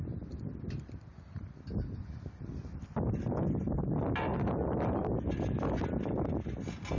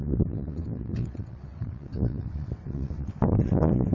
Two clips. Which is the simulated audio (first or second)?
second